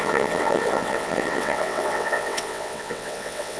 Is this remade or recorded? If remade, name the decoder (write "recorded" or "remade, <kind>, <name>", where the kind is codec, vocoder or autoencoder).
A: remade, vocoder, WaveNeXt